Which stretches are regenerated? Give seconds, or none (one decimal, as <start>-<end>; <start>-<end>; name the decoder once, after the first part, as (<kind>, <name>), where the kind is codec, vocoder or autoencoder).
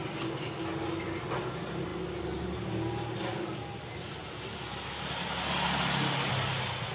none